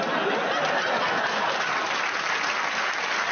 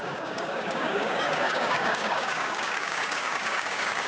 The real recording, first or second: first